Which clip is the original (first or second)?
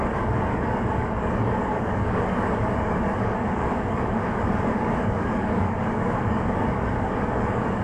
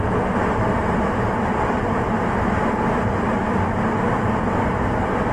second